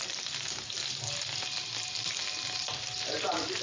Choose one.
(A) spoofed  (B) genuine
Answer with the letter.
B